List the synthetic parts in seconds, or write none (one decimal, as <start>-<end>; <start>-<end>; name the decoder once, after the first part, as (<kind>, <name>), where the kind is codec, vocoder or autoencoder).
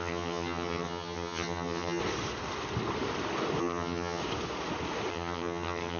0.0-2.0 (vocoder, HiFi-GAN); 3.6-4.2; 5.1-6.0